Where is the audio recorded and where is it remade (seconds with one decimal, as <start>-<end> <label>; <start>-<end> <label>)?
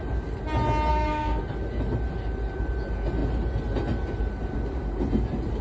0.0-0.9 recorded; 0.9-1.4 remade; 1.4-5.6 recorded